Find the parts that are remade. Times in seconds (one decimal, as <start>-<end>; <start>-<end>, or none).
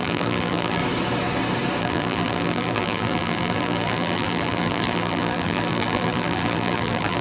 0.0-0.8; 1.8-7.2